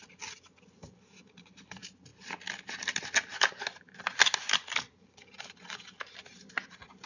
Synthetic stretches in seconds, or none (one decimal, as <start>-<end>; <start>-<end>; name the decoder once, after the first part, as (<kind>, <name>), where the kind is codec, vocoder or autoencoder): none